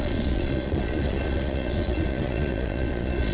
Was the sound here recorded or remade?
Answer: remade